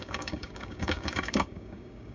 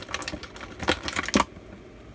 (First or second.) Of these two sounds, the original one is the second